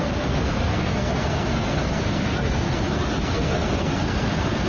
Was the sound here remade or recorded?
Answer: remade